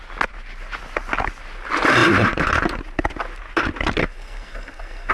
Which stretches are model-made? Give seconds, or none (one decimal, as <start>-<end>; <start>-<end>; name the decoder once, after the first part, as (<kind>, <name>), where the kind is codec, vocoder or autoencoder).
4.0-5.1 (codec, SNAC)